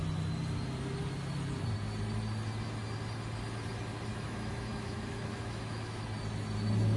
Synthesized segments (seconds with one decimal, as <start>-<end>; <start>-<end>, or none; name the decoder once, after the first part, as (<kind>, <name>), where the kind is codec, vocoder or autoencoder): 4.1-6.0 (autoencoder, DAC-VAE)